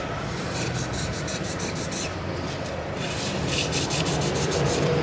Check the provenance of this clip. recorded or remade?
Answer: recorded